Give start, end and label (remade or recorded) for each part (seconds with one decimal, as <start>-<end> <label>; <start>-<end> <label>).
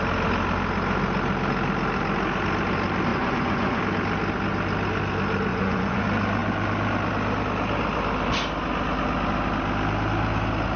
0.0-3.1 recorded; 3.1-3.8 remade; 3.8-5.5 recorded; 5.5-6.0 remade; 6.0-10.8 recorded